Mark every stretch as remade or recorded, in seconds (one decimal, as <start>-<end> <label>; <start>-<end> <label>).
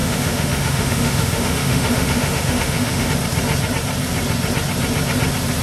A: 0.0-3.1 remade; 3.1-5.6 recorded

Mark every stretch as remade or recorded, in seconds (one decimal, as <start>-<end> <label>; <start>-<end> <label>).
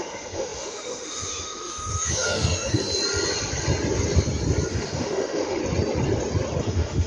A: 0.0-2.8 remade; 2.8-4.7 recorded; 4.7-5.6 remade; 5.6-6.6 recorded; 6.6-7.1 remade